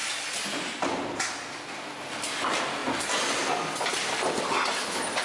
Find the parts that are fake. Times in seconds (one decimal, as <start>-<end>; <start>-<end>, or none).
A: none